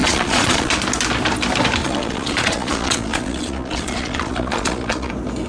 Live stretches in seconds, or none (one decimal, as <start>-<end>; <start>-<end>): 0.7-1.8; 5.1-5.5